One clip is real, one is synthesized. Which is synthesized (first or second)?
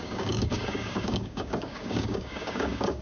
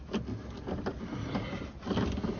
first